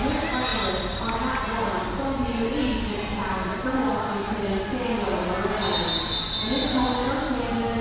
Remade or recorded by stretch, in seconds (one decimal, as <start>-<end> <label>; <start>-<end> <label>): 0.0-3.3 recorded; 3.3-3.8 remade; 3.8-7.8 recorded